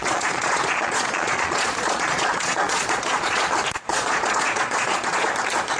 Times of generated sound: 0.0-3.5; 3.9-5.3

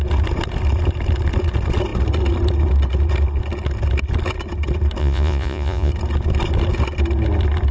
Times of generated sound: 5.0-5.9

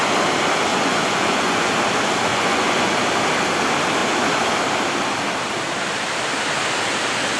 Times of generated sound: 0.7-1.7; 2.3-2.9

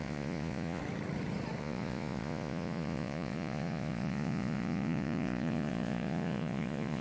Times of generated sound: 0.0-0.8; 1.6-7.0

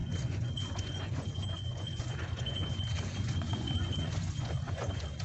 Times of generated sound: 0.0-5.2

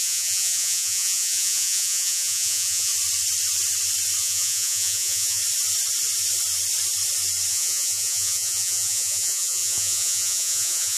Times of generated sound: 0.0-2.9; 4.2-5.4; 7.5-11.0